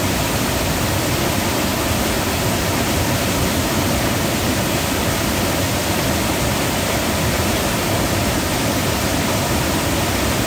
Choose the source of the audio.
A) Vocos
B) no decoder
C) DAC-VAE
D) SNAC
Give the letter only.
B